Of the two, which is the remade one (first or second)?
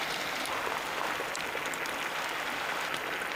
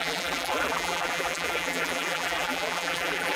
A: second